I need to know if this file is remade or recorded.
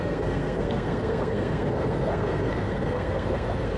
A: remade